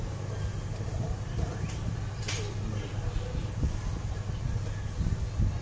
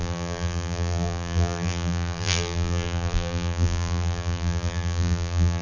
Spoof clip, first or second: second